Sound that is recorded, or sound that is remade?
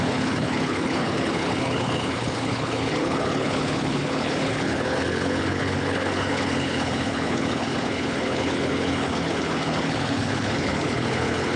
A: remade